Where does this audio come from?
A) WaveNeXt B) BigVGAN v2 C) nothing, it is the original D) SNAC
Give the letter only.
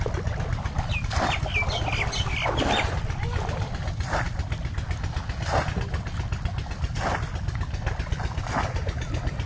C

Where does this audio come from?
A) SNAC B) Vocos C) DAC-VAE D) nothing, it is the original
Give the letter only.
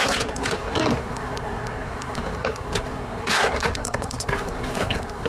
A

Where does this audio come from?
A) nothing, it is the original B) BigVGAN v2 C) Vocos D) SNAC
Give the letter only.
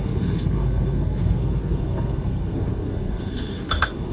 D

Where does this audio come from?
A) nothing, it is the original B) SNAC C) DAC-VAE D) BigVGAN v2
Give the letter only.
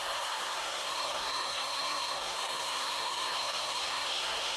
B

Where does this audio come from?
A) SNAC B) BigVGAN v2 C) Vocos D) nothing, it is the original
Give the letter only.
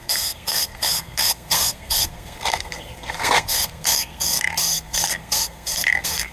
A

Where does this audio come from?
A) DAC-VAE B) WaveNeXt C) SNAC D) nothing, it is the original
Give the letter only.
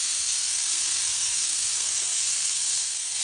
C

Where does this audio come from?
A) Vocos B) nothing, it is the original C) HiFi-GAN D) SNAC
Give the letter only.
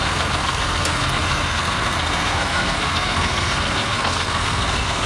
D